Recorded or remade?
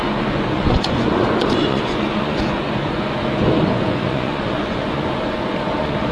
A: remade